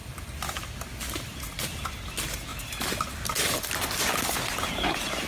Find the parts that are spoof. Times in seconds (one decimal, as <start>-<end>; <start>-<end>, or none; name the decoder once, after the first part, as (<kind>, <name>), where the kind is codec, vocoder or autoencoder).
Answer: 2.5-3.7 (vocoder, BigVGAN v2); 4.5-5.3